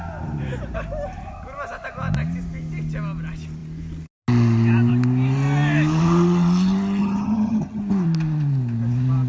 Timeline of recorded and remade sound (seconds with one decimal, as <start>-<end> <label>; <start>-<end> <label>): 0.0-7.0 recorded; 7.0-7.8 remade; 7.8-9.3 recorded